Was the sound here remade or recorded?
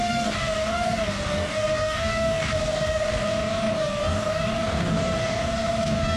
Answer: remade